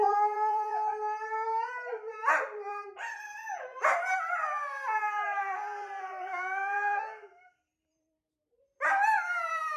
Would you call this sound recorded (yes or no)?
no